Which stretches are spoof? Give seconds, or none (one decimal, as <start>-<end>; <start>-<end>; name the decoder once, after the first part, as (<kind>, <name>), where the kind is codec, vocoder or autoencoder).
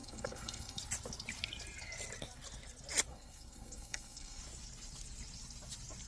0.0-0.8 (codec, SNAC); 3.1-4.4